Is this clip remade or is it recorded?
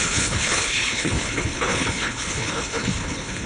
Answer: remade